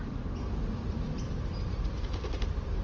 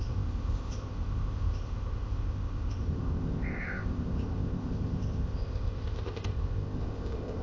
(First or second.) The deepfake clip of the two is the second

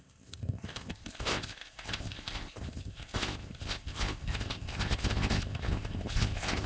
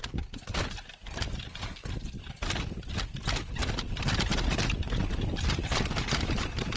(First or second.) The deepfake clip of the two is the first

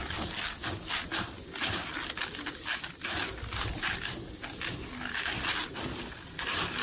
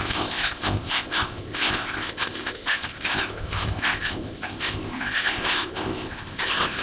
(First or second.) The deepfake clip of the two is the second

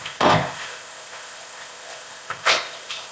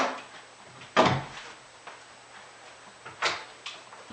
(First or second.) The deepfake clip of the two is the first